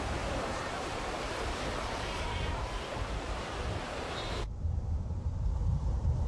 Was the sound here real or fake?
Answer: fake